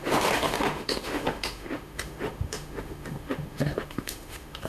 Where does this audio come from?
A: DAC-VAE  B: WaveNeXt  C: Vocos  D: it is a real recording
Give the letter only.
A